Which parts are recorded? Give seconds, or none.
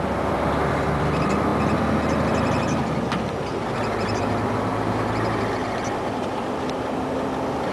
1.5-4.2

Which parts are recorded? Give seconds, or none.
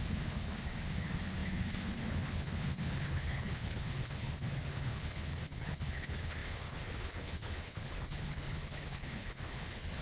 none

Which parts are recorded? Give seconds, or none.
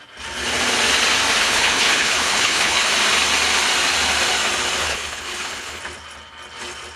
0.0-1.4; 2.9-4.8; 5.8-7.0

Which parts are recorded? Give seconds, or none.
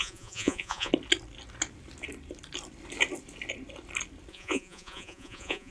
0.9-4.3